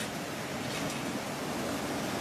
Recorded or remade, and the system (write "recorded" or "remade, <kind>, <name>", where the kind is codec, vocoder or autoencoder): recorded